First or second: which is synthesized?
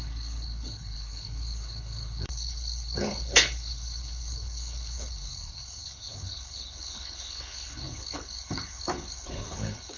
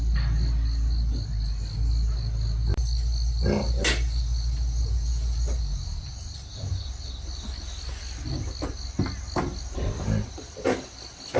first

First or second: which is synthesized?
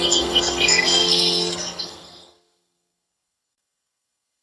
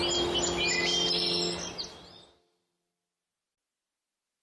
first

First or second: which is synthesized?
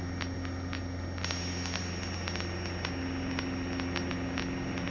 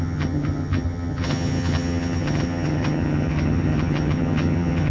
second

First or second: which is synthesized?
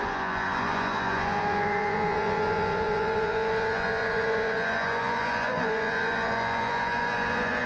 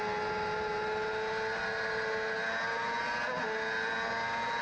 first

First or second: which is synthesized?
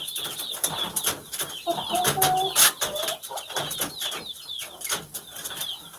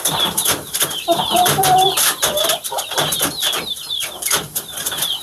second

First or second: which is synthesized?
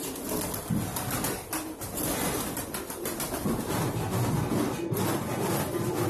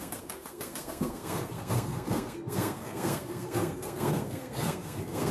second